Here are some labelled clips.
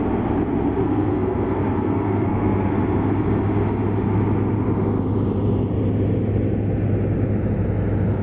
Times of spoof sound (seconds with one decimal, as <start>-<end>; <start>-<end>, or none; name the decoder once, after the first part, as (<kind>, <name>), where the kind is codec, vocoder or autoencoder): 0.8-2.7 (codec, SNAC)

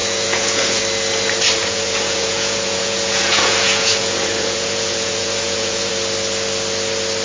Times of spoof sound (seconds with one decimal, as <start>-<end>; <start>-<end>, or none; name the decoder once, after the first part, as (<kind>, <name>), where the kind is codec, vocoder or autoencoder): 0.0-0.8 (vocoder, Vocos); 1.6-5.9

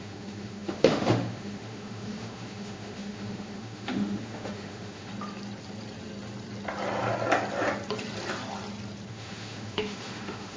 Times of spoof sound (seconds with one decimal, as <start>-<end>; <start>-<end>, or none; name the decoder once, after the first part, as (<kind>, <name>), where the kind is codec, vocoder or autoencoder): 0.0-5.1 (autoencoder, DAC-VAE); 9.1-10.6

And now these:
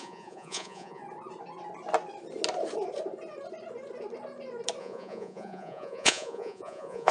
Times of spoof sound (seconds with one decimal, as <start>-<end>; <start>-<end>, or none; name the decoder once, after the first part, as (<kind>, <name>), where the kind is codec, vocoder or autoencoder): 0.0-1.0 (vocoder, Vocos); 4.8-7.1

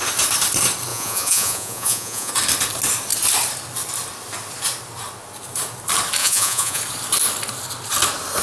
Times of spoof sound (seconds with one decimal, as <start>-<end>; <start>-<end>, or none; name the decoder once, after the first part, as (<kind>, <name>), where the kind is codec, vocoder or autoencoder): 0.9-2.3 (vocoder, Vocos); 6.2-6.8

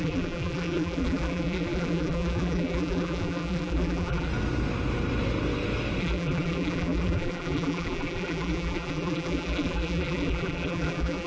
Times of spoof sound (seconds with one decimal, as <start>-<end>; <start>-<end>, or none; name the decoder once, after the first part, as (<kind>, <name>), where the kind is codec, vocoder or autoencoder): 0.0-4.3 (vocoder, BigVGAN v2); 6.0-11.3

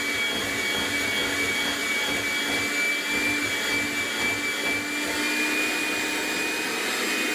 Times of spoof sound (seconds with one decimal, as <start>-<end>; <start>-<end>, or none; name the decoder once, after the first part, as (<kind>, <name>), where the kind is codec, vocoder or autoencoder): none

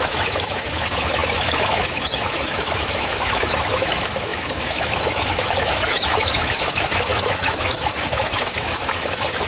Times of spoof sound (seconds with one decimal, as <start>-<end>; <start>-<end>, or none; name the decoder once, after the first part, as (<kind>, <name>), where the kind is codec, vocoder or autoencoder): 0.0-9.5 (autoencoder, DAC-VAE)